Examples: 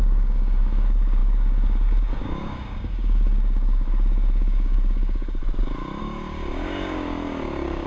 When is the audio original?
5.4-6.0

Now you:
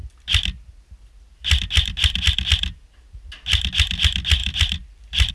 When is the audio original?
0.0-4.4

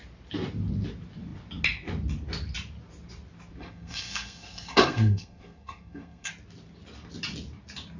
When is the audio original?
0.0-3.6; 6.3-8.0

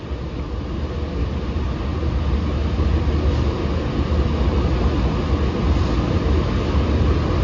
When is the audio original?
0.0-7.4

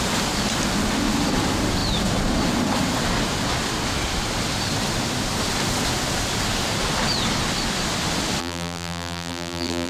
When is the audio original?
0.0-8.4

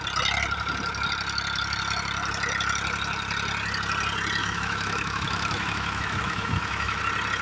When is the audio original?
0.0-4.4; 7.0-7.4

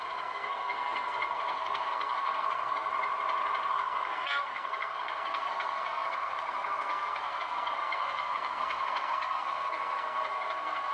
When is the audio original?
2.9-3.7

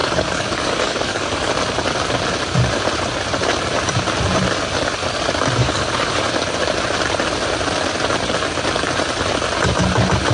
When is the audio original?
1.5-5.6; 6.1-10.3